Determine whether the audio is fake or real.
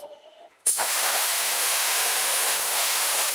fake